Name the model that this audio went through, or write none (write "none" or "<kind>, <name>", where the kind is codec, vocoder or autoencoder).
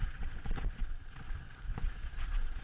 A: vocoder, Vocos